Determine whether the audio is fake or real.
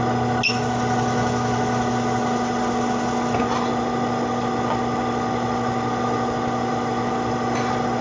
real